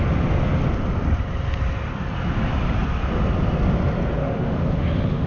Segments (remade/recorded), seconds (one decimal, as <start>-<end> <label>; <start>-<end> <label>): 0.0-4.2 recorded; 4.2-5.3 remade